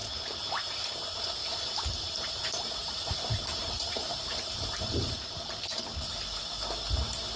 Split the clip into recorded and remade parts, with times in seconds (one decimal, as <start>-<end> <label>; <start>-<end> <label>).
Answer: 0.0-1.4 recorded; 1.4-5.8 remade; 5.8-7.4 recorded